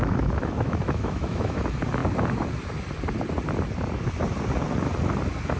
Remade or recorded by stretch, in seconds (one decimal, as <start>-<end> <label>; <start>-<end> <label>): 0.0-1.6 remade; 1.6-5.6 recorded